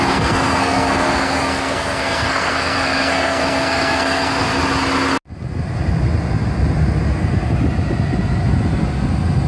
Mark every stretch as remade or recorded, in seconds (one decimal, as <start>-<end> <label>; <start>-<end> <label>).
0.0-4.5 remade; 4.5-9.5 recorded